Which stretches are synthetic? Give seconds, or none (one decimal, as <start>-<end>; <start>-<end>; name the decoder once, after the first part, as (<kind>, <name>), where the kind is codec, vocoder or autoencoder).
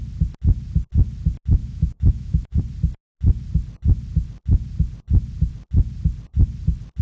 1.6-2.6 (autoencoder, DAC-VAE)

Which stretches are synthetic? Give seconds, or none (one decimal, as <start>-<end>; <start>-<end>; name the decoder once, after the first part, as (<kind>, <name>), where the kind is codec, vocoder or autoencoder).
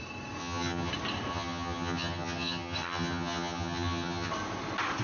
0.4-0.9 (vocoder, HiFi-GAN); 1.3-4.3